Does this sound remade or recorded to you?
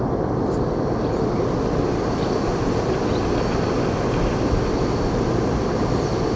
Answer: recorded